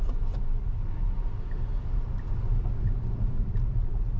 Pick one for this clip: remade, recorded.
recorded